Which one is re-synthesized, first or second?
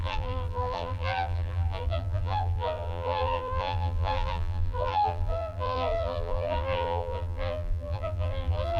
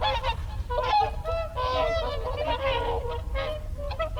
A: first